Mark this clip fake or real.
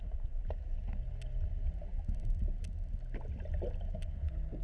real